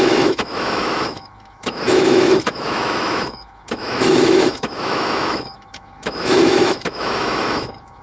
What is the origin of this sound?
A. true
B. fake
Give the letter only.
B